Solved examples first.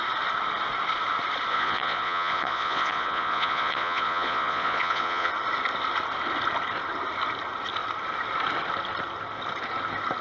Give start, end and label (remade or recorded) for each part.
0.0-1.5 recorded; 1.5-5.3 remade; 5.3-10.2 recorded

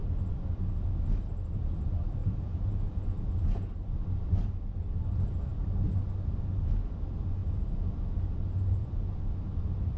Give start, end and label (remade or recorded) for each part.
0.0-2.2 recorded; 2.2-3.7 remade; 3.7-7.4 recorded; 7.4-8.4 remade; 8.4-8.8 recorded; 8.8-9.5 remade; 9.5-10.0 recorded

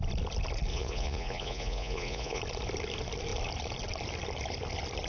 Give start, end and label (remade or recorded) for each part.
0.0-0.7 recorded; 0.7-2.4 remade; 2.4-5.1 recorded

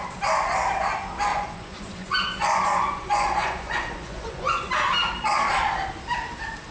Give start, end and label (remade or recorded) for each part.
0.0-1.3 recorded; 1.3-4.7 remade; 4.7-6.7 recorded